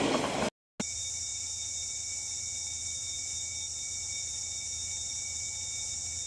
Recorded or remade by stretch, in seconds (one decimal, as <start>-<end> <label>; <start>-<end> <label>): 0.0-6.3 recorded